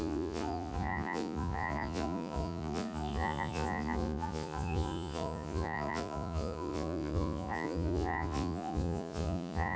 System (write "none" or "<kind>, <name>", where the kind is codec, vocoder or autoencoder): vocoder, Vocos